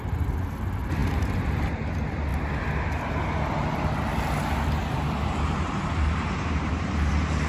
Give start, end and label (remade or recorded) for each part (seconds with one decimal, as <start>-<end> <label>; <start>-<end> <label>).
0.0-4.8 recorded; 4.8-7.1 remade; 7.1-7.5 recorded